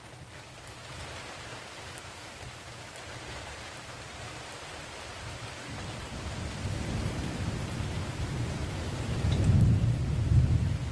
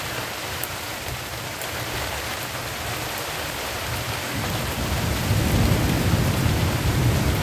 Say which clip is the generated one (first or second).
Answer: first